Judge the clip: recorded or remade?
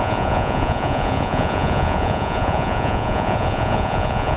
remade